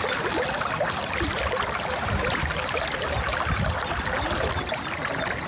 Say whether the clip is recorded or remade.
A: recorded